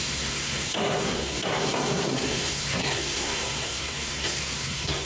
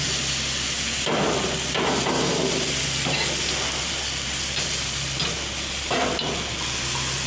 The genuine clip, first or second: second